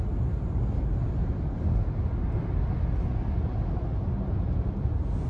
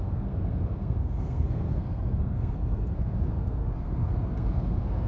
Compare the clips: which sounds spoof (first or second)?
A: second